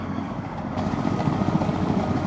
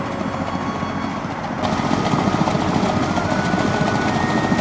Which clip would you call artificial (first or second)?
first